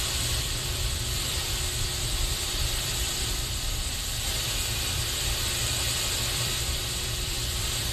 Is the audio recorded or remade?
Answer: remade